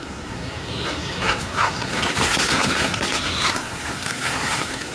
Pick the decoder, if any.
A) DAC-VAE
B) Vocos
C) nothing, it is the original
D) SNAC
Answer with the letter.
D